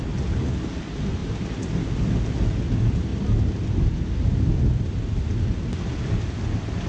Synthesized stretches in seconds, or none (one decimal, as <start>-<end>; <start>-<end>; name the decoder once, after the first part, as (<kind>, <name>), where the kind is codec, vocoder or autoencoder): none